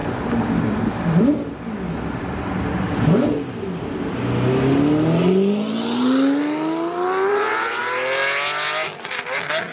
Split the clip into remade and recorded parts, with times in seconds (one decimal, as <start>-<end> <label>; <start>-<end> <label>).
0.0-7.3 recorded; 7.3-7.8 remade; 7.8-9.7 recorded